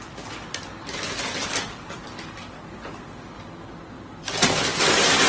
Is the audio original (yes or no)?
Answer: yes